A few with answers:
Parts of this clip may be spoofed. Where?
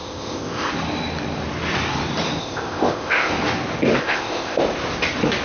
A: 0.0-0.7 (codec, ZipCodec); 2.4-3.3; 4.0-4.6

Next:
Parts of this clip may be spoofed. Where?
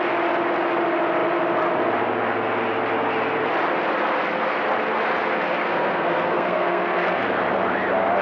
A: 5.6-7.2 (codec, SNAC)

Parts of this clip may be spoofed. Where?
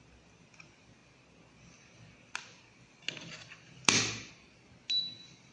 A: none